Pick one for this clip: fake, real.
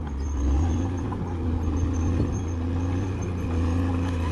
real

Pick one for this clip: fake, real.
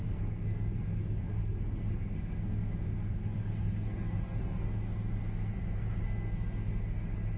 fake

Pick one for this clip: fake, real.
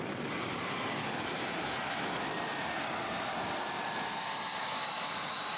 real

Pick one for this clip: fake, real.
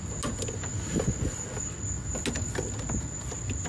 real